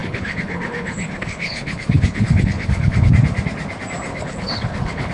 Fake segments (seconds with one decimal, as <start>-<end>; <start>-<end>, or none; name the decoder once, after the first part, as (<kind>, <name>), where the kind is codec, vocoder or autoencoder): 0.0-3.1 (codec, HILCodec); 4.1-5.1